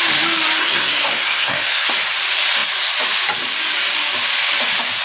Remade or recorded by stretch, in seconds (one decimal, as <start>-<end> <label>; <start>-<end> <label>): 0.0-0.6 recorded; 0.6-1.9 remade; 1.9-5.0 recorded

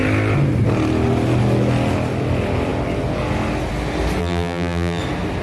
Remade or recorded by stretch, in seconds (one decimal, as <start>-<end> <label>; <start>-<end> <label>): 0.0-4.2 recorded; 4.2-5.0 remade; 5.0-5.4 recorded

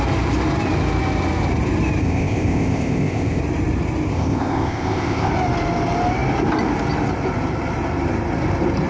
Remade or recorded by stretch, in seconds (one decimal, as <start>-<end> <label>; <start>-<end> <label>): 0.0-2.0 recorded; 2.0-3.4 remade; 3.4-4.1 recorded; 4.1-5.3 remade; 5.3-8.9 recorded

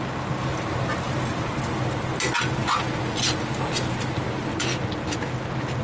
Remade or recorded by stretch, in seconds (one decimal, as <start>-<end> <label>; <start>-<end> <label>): 0.0-5.8 recorded

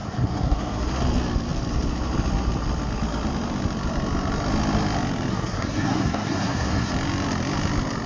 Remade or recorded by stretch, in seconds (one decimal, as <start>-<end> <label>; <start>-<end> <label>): 0.0-0.9 remade; 0.9-5.3 recorded; 5.3-6.9 remade; 6.9-8.1 recorded

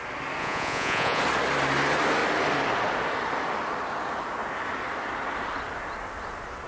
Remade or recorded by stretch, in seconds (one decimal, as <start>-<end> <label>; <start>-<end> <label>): 0.0-0.4 recorded; 0.4-1.2 remade; 1.2-6.7 recorded